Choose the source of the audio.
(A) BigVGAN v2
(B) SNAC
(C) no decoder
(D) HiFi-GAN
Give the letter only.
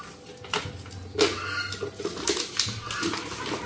C